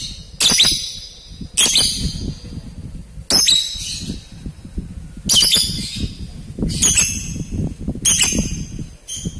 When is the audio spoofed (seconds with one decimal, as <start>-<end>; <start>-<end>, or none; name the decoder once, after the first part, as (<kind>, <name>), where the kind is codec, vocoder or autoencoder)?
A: none